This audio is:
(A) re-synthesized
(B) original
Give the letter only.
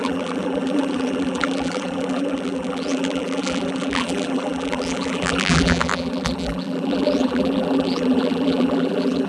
A